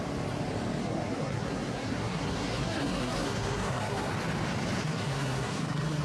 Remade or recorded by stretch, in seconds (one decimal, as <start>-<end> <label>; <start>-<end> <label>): 0.0-0.8 recorded; 0.8-4.1 remade; 4.1-4.8 recorded; 4.8-6.0 remade